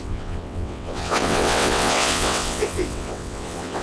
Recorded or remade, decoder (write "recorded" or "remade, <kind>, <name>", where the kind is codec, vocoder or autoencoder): remade, vocoder, WaveNeXt